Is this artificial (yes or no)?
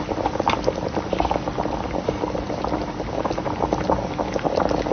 no